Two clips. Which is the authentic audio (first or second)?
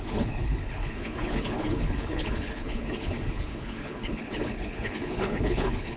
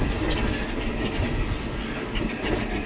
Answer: second